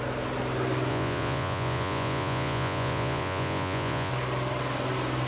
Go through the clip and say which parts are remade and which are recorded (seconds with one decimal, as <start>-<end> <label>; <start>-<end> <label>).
0.0-0.9 recorded; 0.9-4.1 remade; 4.1-5.3 recorded